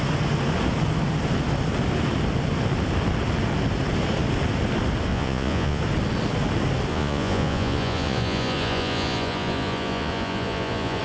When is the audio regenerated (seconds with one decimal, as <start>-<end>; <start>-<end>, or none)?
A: 5.1-5.8; 6.9-11.0